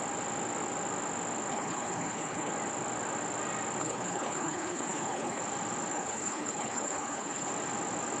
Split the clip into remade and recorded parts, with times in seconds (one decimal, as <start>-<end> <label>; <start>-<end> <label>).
0.0-1.5 recorded; 1.5-2.5 remade; 2.5-3.8 recorded; 3.8-5.4 remade; 5.4-5.9 recorded; 5.9-7.5 remade; 7.5-8.2 recorded